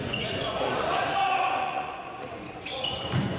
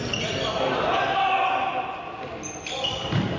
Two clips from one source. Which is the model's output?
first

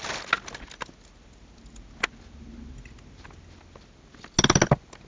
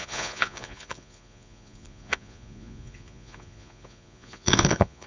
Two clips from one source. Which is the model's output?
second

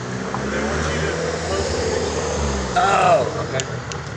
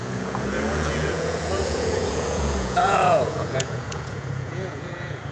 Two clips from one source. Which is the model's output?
second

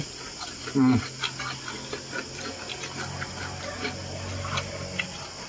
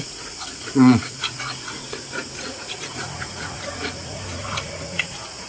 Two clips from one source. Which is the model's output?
second